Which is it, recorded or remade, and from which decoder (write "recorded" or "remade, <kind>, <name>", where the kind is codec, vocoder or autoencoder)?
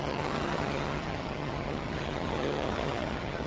remade, vocoder, HiFi-GAN